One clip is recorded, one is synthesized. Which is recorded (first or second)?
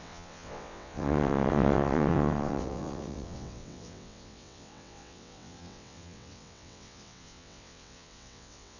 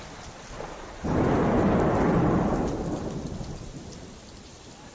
second